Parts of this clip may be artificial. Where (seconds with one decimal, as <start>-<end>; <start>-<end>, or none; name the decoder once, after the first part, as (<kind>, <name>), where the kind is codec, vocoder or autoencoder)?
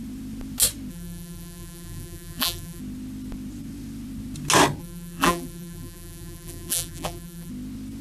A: 0.9-2.8 (vocoder, BigVGAN v2); 4.8-7.5